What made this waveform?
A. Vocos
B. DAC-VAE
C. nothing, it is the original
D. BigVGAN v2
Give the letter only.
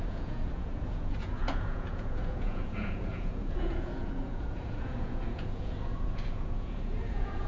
A